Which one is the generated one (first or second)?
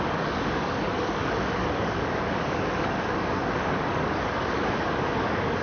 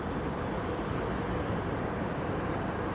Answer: first